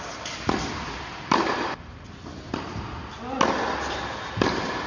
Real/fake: real